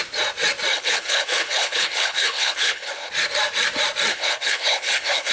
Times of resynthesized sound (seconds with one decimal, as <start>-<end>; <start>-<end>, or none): 0.7-3.1; 4.1-5.3